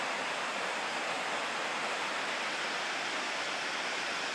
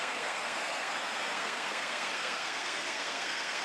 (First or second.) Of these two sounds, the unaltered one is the first